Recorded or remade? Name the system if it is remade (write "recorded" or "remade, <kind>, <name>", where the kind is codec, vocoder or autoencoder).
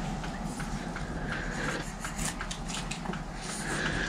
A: recorded